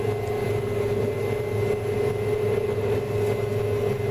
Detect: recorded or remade recorded